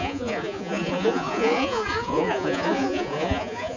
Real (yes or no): no